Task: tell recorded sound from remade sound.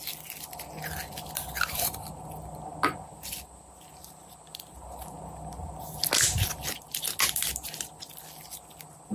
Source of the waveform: recorded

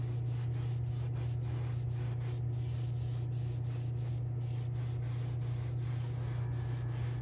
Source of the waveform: recorded